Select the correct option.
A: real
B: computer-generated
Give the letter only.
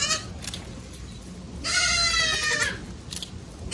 A